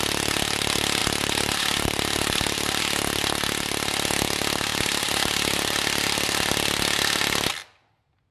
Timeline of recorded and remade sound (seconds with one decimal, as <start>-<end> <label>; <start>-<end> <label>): 0.0-1.0 recorded; 1.0-2.8 remade; 2.8-4.7 recorded; 4.7-5.5 remade; 5.5-8.3 recorded